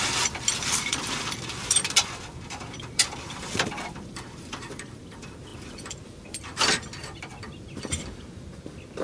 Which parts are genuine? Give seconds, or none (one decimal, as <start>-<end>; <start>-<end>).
5.5-7.9